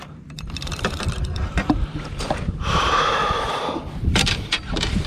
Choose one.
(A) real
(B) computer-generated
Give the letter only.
B